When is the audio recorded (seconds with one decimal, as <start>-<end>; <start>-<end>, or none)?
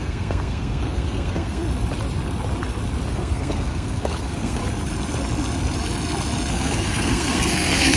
1.6-3.1; 4.6-6.5